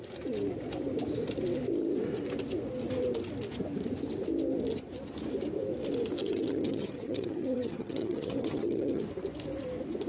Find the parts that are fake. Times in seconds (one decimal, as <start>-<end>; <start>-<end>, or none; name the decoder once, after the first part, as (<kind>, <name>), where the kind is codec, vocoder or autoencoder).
6.2-9.0 (vocoder, HiFi-GAN)